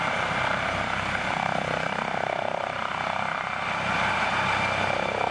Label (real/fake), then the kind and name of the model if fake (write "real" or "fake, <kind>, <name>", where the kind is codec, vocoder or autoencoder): real